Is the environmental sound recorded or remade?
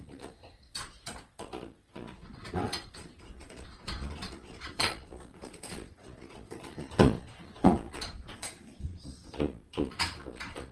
remade